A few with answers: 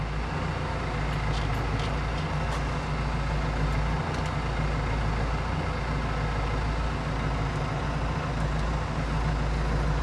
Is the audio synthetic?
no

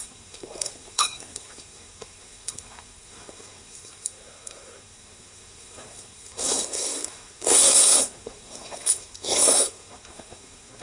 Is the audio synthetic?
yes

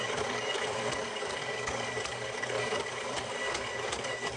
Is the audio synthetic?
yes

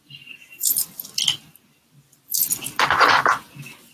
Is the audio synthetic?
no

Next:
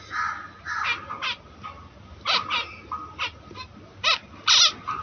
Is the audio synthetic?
no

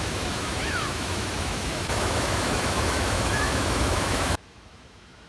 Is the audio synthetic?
yes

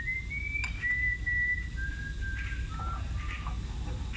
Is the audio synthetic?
no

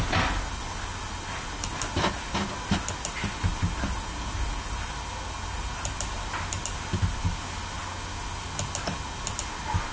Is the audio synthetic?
no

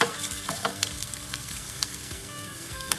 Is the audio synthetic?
yes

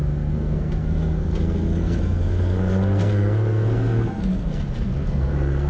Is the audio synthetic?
yes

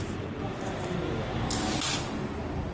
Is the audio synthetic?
no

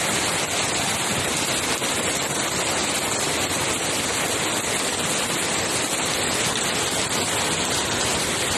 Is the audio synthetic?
yes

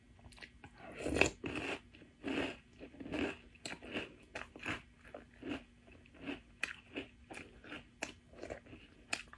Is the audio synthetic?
no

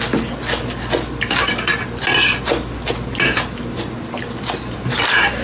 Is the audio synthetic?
no